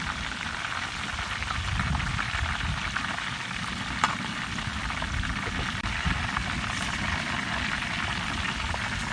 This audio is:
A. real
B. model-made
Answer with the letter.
A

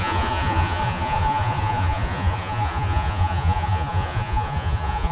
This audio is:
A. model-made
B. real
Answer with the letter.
A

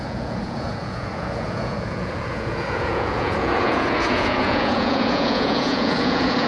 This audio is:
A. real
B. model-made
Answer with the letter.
B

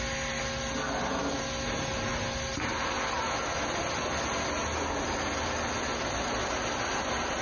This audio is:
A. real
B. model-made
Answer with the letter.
A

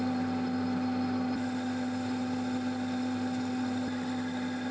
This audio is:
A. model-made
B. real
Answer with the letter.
B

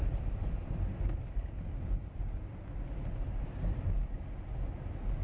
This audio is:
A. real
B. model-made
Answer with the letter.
A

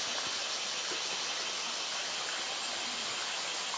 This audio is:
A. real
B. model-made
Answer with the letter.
A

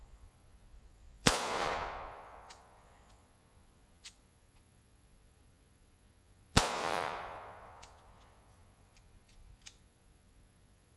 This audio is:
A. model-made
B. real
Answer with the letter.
A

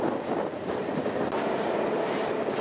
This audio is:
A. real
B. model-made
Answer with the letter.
A